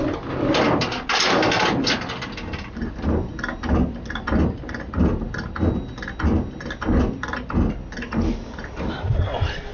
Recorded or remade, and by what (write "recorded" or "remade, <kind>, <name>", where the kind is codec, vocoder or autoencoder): recorded